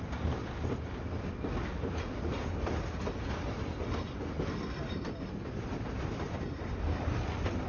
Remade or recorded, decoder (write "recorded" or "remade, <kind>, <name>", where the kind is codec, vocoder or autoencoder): recorded